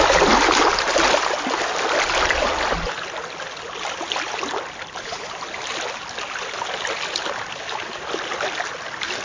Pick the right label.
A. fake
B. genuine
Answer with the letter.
B